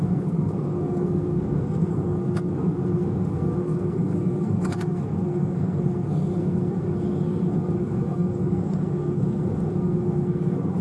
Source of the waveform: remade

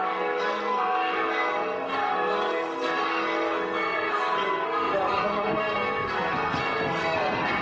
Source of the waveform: remade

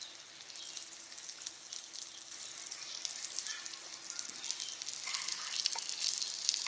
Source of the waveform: recorded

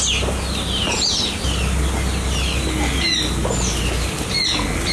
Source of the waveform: recorded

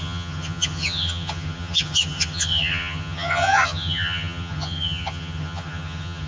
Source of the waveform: remade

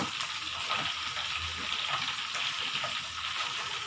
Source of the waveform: recorded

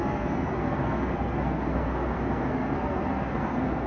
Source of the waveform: remade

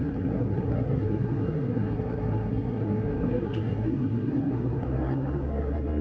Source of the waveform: remade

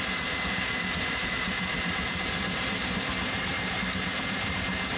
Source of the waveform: remade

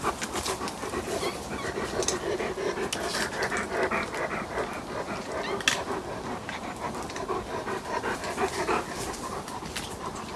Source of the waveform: recorded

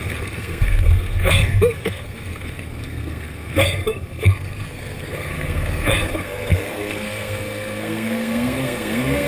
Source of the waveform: remade